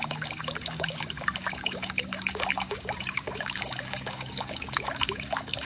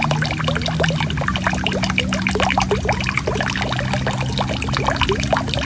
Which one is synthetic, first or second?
first